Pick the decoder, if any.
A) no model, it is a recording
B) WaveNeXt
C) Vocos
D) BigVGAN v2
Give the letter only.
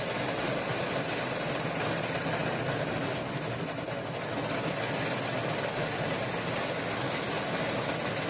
A